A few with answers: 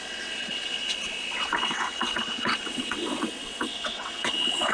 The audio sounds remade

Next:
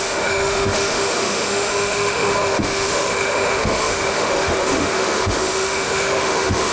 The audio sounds remade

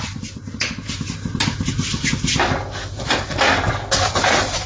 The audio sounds recorded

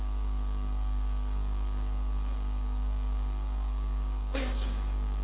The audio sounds remade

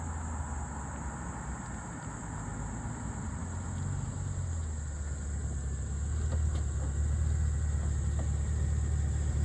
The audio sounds recorded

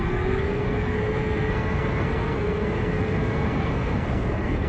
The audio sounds remade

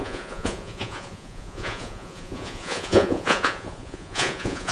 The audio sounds remade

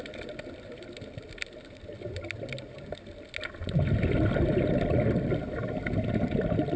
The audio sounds recorded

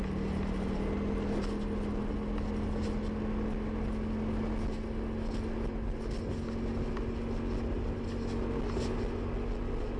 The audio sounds recorded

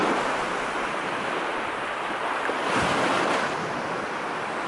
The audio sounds recorded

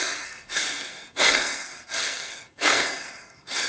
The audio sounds remade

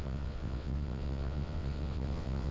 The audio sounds remade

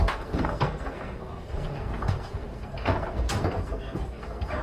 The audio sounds remade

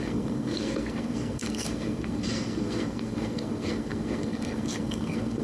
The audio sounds remade